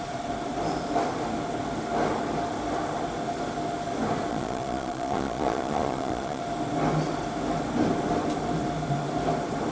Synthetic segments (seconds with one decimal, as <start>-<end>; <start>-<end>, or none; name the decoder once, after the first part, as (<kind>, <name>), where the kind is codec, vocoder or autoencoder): 4.3-6.4 (vocoder, Vocos)